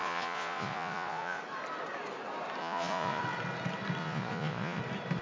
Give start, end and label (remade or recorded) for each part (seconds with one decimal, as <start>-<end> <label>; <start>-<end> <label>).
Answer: 0.0-1.4 remade; 1.4-2.6 recorded; 2.6-3.2 remade; 3.2-4.0 recorded; 4.0-4.8 remade; 4.8-5.2 recorded